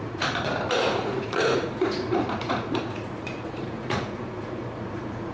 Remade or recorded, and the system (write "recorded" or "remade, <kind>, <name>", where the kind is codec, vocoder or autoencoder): remade, vocoder, Vocos